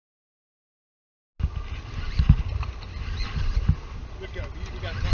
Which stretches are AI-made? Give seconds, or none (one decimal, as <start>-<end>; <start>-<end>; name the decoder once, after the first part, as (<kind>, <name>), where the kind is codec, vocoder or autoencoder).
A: none